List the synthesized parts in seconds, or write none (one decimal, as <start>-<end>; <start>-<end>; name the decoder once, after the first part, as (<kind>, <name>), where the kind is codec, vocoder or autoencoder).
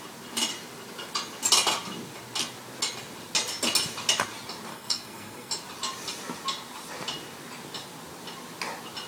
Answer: 4.7-5.5 (codec, SNAC)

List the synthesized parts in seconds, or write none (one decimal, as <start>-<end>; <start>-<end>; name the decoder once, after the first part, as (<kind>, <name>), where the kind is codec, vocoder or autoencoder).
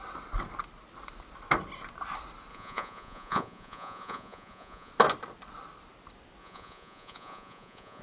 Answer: 2.5-4.9 (vocoder, Vocos); 6.4-8.0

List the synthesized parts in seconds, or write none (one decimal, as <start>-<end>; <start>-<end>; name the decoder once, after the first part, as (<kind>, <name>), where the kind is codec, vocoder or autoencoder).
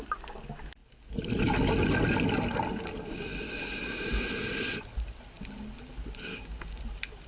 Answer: 6.3-6.8 (codec, DAC)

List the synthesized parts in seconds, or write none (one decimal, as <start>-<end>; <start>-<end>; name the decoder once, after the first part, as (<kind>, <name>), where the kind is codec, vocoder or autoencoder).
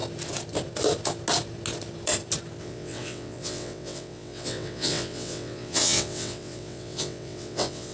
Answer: 2.6-7.9 (vocoder, WaveNeXt)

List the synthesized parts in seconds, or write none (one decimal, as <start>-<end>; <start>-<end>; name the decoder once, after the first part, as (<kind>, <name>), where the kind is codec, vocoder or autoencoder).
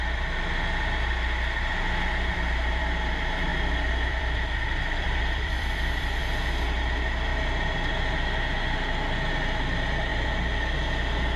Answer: 2.3-2.8 (vocoder, BigVGAN v2); 3.5-6.2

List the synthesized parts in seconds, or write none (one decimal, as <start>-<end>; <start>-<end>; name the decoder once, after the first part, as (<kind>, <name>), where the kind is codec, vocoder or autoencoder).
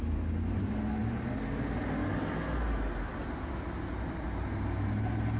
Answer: none